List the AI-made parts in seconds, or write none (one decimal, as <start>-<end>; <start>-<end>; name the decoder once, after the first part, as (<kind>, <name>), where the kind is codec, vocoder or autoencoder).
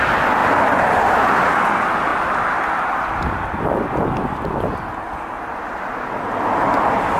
0.4-1.5 (vocoder, BigVGAN v2)